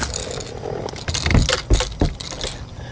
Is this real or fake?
real